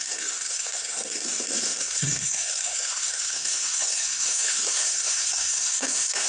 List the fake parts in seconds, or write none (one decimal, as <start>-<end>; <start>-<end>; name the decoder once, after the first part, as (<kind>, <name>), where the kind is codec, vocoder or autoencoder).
0.0-6.3 (codec, SNAC)